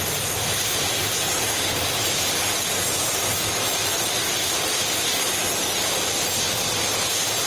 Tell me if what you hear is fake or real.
real